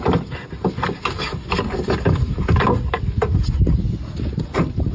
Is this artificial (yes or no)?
no